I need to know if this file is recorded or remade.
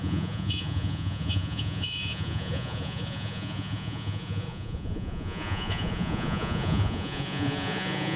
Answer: remade